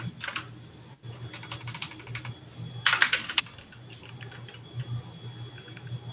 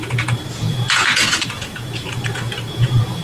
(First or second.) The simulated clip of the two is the second